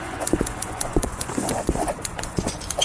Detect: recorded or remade remade